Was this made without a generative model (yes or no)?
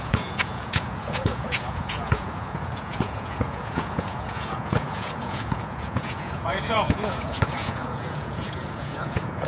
no